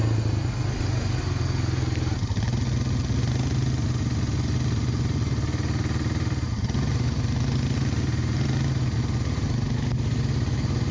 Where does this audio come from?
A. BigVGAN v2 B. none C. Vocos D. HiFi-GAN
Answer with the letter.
B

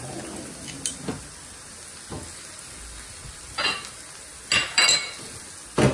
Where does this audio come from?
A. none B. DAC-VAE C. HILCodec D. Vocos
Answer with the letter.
A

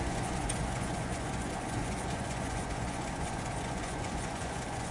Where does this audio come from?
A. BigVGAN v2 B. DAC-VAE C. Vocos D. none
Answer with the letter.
C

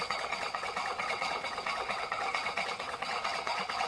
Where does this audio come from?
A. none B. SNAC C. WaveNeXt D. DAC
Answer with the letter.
C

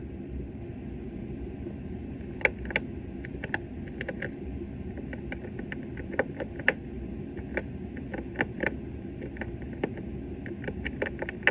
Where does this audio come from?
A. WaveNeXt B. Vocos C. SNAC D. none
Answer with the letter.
D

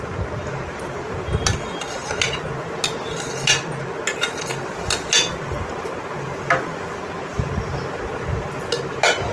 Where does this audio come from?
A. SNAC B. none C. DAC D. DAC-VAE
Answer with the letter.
B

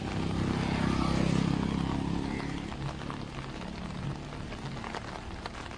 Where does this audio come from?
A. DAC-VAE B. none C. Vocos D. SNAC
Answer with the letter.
B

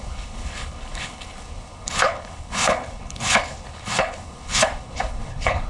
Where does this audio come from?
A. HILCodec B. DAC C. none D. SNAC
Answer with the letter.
A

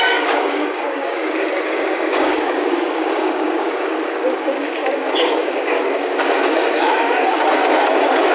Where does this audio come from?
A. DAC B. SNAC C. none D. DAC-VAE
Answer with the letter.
A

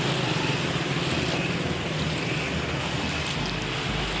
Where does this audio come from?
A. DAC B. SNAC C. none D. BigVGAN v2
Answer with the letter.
C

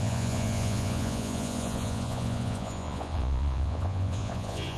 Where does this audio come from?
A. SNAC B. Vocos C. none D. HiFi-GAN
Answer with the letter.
B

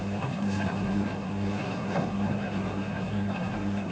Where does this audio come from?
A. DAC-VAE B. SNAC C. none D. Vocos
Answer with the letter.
B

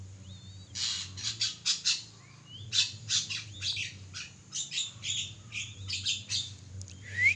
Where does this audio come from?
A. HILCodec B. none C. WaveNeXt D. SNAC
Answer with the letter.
B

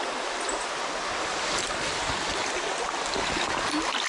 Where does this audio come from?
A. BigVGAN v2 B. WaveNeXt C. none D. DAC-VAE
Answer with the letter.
C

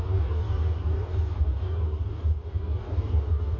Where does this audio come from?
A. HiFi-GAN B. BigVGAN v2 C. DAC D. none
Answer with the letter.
C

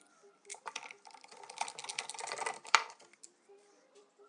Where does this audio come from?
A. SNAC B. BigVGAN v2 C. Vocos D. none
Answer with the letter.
B